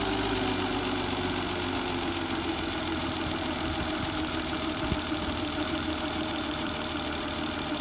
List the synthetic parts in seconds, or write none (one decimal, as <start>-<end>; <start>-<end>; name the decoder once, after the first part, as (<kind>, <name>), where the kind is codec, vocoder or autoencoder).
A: 2.5-6.7 (vocoder, BigVGAN v2)